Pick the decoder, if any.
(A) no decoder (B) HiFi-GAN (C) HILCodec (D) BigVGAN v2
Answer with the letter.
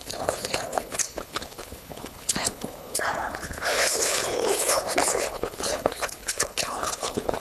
C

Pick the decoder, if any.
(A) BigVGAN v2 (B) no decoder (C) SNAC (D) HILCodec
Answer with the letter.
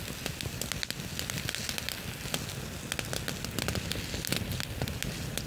B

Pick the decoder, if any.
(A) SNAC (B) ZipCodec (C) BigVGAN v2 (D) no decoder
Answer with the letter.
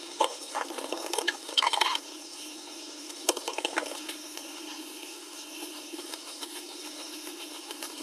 A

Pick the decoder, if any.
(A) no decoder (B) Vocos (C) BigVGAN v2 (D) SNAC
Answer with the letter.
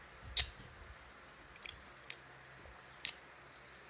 A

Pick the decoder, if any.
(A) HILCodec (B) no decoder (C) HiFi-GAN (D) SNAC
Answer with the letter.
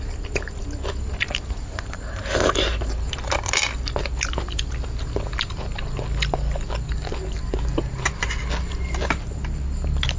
B